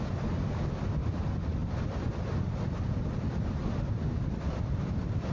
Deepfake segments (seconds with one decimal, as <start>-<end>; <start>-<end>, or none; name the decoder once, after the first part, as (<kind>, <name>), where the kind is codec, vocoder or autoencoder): none